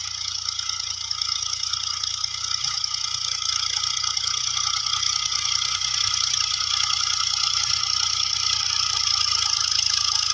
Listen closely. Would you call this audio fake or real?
fake